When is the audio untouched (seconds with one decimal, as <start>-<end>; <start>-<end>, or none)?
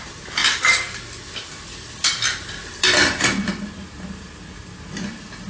0.0-5.5